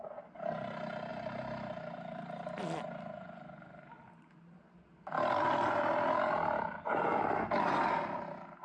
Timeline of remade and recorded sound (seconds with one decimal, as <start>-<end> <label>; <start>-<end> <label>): 0.0-1.1 recorded; 1.1-5.0 remade; 5.0-8.6 recorded